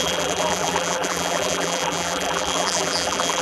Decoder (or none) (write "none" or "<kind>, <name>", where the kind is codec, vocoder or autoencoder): vocoder, BigVGAN v2